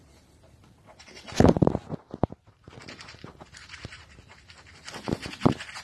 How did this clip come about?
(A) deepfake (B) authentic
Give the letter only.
A